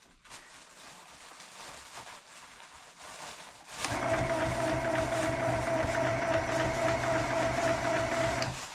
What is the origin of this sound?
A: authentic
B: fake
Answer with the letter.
A